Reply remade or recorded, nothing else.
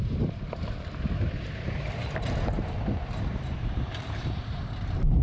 remade